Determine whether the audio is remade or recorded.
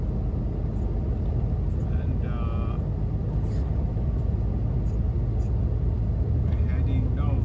recorded